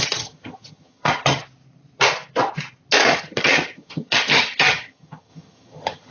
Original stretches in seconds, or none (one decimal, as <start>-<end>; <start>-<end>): 1.4-3.1